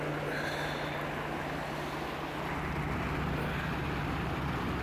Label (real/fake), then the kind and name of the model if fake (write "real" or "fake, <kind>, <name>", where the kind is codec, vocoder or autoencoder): real